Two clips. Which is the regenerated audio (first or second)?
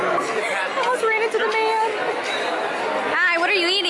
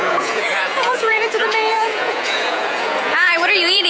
second